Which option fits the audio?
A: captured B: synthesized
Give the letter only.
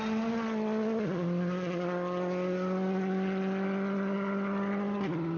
A